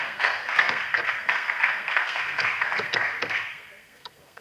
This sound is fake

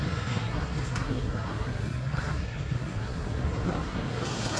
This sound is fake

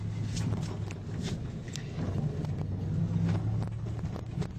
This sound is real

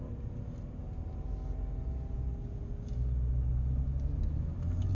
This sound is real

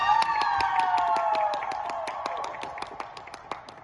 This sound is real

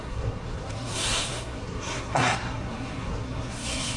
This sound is fake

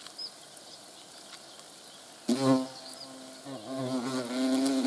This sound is real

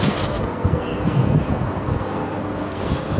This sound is fake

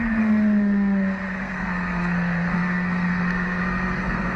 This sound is fake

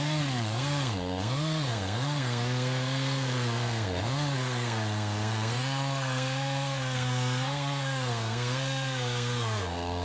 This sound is fake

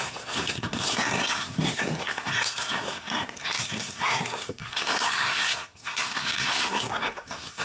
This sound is fake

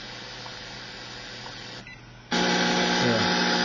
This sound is real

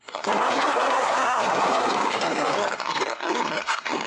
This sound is fake